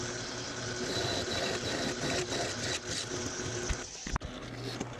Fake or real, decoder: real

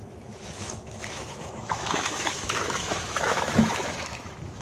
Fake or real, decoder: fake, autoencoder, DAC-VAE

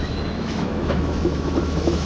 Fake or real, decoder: fake, autoencoder, DAC-VAE